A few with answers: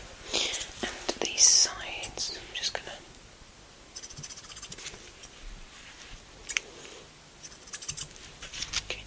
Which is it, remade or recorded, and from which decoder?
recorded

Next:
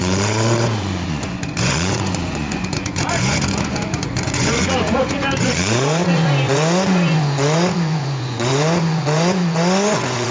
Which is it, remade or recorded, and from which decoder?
remade, vocoder, Vocos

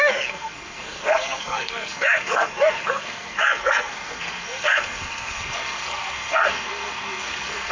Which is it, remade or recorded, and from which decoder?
remade, codec, SNAC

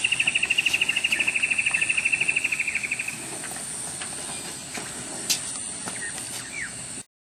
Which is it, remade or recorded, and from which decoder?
recorded